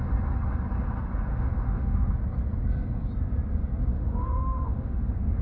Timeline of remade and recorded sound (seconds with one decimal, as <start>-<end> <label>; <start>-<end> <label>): 0.0-1.3 recorded; 1.3-2.1 remade; 2.1-3.9 recorded; 3.9-5.4 remade